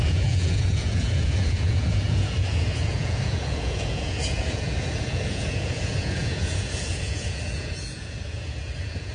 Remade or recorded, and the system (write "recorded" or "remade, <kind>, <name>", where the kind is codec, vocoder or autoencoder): remade, vocoder, Vocos